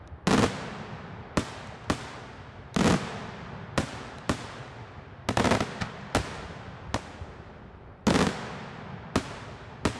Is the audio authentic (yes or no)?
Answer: yes